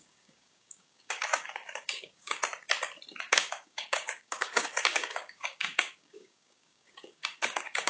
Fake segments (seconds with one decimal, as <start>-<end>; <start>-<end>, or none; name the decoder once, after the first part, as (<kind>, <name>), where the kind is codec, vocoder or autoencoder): 0.0-2.4 (codec, DAC); 3.2-7.9

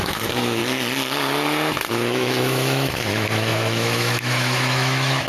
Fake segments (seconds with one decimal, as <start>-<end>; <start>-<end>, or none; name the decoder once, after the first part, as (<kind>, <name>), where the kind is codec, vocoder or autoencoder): 0.0-0.6 (autoencoder, DAC-VAE); 1.9-5.3

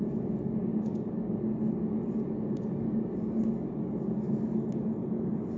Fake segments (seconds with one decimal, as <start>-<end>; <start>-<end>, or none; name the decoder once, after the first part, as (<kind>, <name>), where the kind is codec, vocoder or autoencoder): none

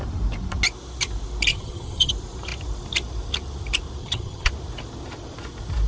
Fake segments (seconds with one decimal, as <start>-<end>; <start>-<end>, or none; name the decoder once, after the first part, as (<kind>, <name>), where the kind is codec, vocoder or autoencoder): 1.5-2.1 (vocoder, HiFi-GAN); 4.0-4.5

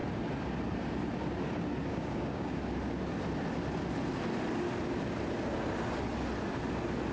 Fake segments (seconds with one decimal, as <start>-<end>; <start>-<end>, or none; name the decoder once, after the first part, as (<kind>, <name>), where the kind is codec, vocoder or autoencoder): 1.9-2.6 (codec, DAC)

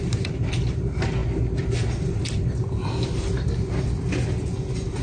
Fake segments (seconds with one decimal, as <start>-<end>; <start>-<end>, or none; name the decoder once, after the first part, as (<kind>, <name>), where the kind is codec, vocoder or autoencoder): none

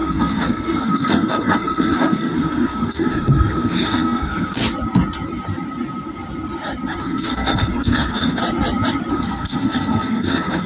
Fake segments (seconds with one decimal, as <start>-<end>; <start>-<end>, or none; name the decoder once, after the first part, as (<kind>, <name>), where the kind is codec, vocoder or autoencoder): 0.0-4.6 (codec, SNAC); 7.0-8.4; 9.1-10.7